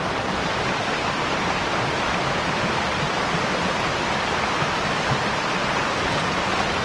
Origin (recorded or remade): recorded